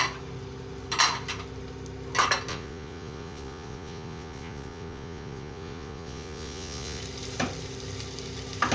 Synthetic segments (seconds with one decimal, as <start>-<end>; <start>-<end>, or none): 2.5-7.0